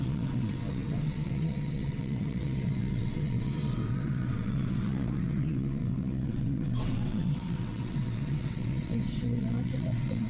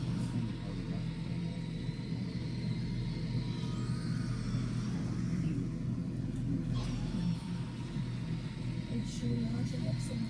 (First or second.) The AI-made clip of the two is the first